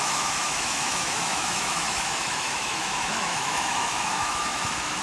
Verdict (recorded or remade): remade